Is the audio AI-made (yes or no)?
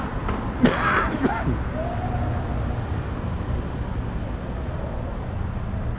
no